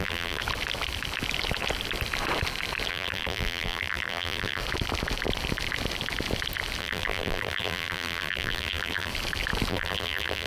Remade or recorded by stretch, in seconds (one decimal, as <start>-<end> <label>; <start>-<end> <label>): 0.0-0.4 remade; 0.4-2.9 recorded; 2.9-4.6 remade; 4.6-6.8 recorded; 6.8-9.1 remade; 9.1-9.7 recorded; 9.7-10.5 remade